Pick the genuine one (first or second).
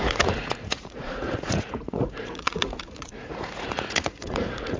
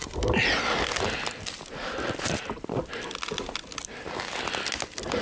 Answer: second